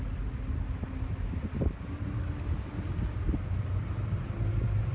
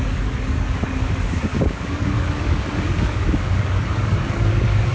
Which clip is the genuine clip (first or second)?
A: first